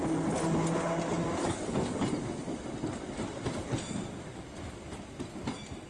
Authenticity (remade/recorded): recorded